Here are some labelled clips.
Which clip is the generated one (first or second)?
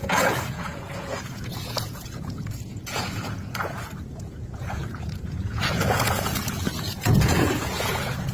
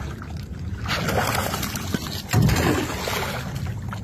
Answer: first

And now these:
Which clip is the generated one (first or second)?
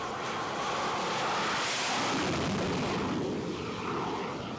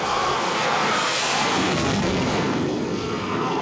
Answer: second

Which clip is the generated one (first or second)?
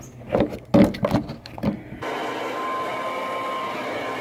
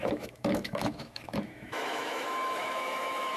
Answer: second